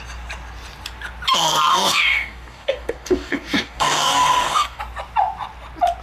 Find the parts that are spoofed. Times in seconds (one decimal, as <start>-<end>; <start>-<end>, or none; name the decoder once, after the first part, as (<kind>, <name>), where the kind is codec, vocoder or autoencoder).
1.7-4.8 (codec, DAC)